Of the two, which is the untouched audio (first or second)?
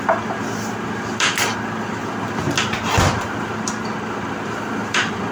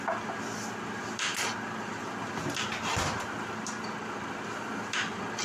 second